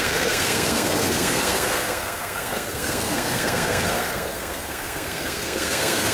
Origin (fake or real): fake